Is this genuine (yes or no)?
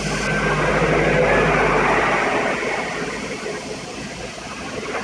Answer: yes